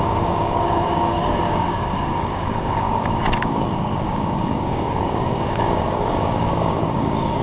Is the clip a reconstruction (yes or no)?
yes